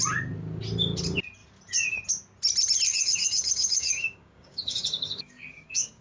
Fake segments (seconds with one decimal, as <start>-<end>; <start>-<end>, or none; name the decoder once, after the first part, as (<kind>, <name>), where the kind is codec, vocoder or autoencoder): 2.9-6.0 (codec, DAC)